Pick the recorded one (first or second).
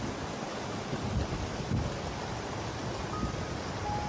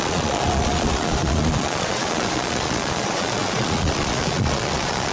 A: first